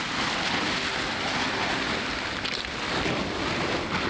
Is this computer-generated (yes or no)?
no